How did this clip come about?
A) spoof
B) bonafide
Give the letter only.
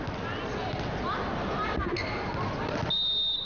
B